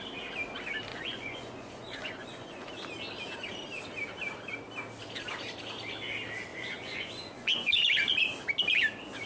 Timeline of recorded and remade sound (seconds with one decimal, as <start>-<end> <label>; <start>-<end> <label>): 0.0-0.9 recorded; 0.9-2.7 remade; 2.7-6.5 recorded; 6.5-7.7 remade; 7.7-9.3 recorded